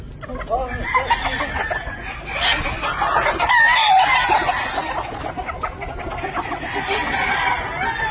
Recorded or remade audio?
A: recorded